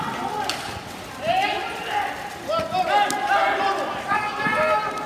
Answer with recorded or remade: recorded